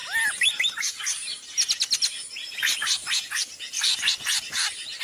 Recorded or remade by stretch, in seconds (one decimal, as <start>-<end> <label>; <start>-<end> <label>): 0.0-3.0 recorded; 3.0-5.0 remade